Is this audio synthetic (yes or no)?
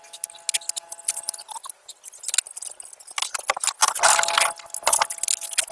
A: no